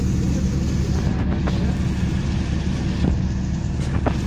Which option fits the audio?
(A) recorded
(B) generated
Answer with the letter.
A